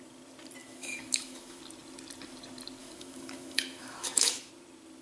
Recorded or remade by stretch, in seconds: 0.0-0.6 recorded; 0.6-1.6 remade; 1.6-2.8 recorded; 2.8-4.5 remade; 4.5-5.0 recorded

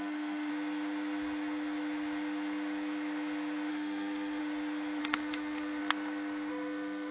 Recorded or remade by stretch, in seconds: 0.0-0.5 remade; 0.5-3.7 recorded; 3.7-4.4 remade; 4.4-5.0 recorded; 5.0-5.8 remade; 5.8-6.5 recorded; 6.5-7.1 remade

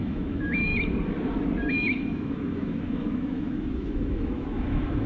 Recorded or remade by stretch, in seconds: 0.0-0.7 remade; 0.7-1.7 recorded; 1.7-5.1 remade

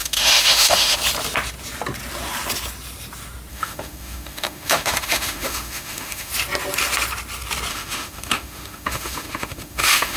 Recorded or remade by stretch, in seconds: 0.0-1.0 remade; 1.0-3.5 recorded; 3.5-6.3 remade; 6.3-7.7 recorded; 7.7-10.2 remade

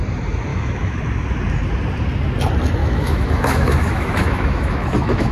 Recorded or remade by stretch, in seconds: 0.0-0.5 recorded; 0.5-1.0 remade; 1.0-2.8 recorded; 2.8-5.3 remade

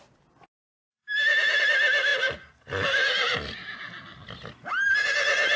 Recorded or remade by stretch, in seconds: 0.0-5.6 recorded

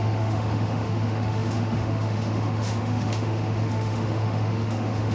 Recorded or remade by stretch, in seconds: 0.0-5.1 remade

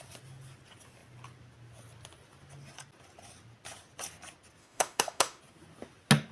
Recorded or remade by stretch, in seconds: 0.0-4.6 recorded; 4.6-5.4 remade; 5.4-6.3 recorded